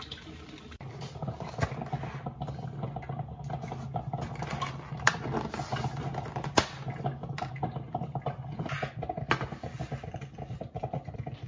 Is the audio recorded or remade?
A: recorded